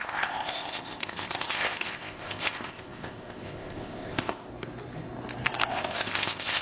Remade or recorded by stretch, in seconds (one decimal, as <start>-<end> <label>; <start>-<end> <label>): 0.0-4.5 remade; 4.5-5.7 recorded; 5.7-6.6 remade